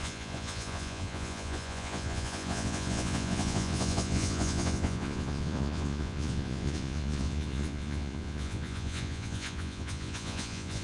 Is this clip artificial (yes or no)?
yes